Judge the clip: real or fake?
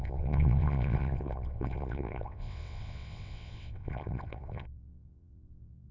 fake